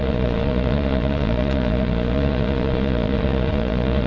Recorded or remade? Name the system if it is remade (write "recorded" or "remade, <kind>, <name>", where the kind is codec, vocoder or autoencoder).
remade, vocoder, Vocos